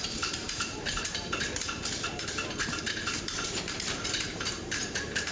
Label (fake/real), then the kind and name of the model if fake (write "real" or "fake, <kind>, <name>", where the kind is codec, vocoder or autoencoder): fake, vocoder, BigVGAN v2